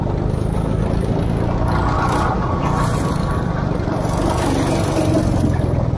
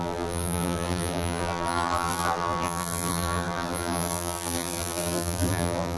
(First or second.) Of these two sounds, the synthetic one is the second